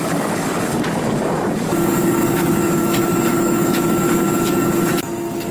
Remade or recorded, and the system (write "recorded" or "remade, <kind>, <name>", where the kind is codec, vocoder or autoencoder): remade, codec, DAC